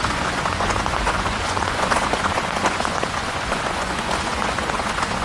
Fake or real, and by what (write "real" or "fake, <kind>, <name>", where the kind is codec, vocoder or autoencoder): fake, vocoder, Vocos